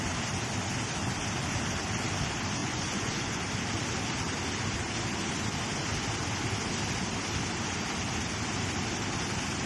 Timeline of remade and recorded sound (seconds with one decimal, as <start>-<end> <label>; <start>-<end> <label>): 0.0-2.6 recorded; 2.6-3.4 remade; 3.4-9.7 recorded